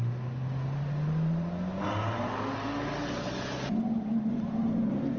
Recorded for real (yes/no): yes